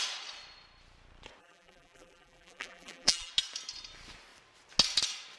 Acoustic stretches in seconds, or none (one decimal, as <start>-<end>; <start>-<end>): 0.0-1.4; 3.3-5.4

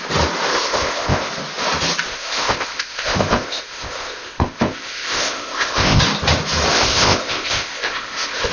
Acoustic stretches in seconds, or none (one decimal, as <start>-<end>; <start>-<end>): 0.0-0.5; 1.3-2.1; 6.0-6.7

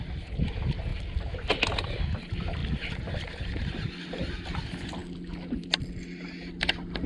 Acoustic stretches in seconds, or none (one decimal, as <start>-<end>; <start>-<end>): 0.0-2.6; 4.2-7.1

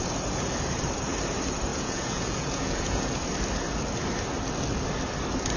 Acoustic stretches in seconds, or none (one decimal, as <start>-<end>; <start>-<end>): 0.0-1.7; 3.1-5.6

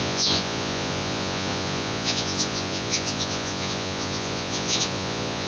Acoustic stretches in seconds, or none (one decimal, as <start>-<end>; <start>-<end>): none

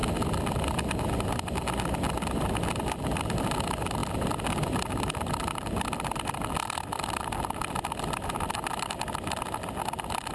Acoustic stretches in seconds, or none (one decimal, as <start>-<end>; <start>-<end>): 0.0-10.3

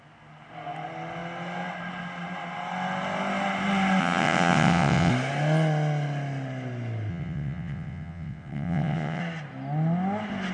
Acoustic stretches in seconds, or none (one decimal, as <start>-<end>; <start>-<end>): 0.0-4.0; 5.1-7.1; 9.2-10.5